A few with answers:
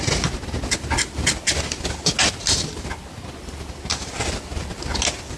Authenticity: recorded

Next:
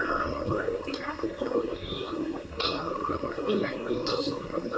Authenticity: remade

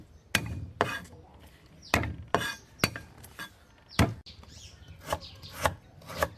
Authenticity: recorded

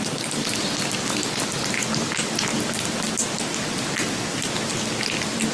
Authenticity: recorded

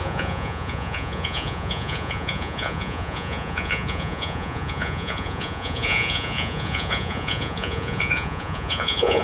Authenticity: remade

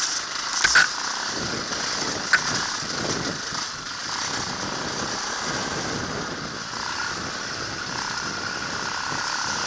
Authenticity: recorded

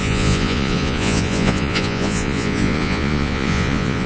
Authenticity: remade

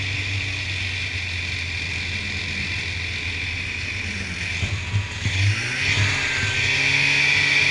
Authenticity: recorded